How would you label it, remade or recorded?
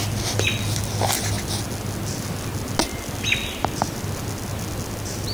recorded